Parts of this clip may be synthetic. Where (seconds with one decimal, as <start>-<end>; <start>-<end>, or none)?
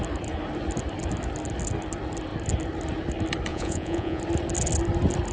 3.5-4.2